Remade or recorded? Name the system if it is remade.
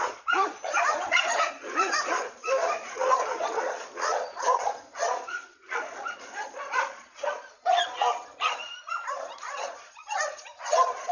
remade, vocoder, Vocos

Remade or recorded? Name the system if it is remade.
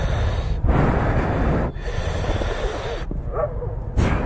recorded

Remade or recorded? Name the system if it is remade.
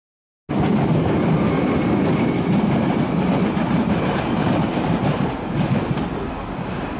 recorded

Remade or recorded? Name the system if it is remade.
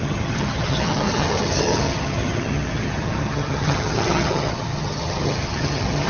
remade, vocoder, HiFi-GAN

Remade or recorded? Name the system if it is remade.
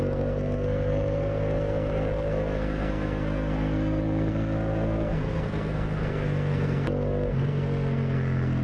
remade, codec, SNAC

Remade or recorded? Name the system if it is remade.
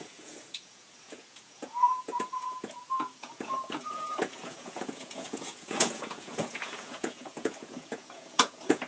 remade, vocoder, Vocos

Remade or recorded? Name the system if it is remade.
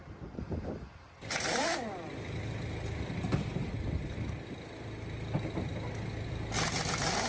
recorded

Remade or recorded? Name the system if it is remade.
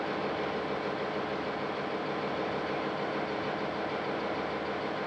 recorded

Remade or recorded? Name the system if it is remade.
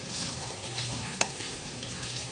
remade, codec, SNAC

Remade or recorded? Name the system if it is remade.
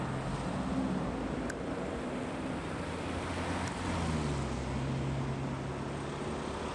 recorded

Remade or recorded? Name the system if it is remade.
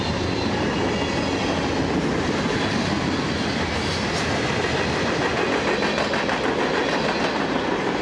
recorded